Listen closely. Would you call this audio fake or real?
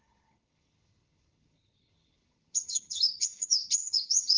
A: fake